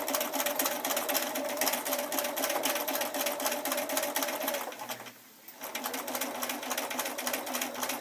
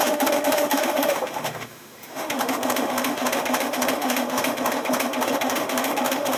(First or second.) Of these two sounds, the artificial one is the second